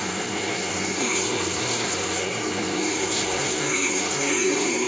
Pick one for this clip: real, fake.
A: fake